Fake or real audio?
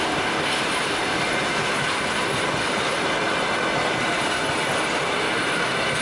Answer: real